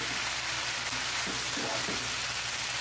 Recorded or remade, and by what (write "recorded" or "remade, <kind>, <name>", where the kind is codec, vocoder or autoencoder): recorded